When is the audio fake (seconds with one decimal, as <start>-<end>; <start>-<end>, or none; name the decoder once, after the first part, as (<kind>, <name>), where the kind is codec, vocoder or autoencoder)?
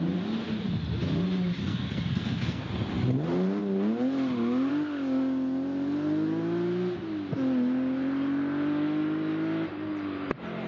1.6-2.7 (codec, SNAC)